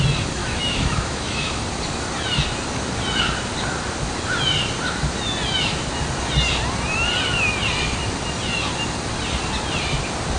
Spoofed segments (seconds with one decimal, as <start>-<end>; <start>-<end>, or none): 0.4-1.6